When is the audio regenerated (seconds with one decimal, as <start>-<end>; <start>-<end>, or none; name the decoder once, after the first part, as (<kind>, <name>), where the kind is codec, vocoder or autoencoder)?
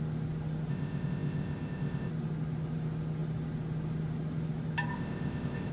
0.7-2.1 (codec, ZipCodec); 4.9-5.7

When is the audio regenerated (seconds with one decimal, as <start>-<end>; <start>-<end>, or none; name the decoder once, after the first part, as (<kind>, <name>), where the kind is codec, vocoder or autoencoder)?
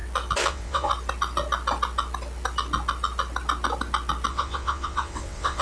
0.5-0.9 (vocoder, WaveNeXt); 4.3-5.6